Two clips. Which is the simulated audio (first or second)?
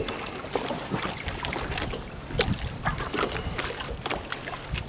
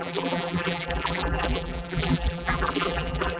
second